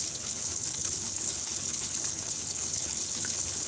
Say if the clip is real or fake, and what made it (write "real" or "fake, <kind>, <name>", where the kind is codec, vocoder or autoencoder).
fake, codec, HILCodec